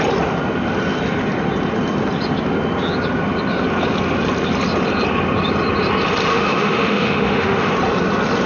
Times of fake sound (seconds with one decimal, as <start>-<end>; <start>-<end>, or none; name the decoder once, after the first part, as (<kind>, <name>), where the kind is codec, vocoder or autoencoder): 6.3-7.7 (autoencoder, DAC-VAE)